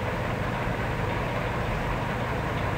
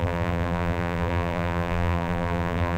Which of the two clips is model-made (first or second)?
second